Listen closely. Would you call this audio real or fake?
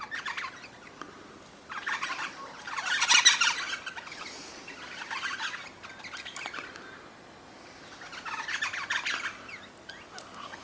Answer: real